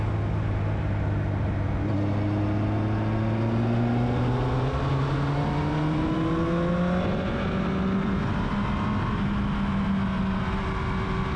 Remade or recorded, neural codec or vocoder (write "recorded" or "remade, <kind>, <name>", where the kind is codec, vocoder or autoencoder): recorded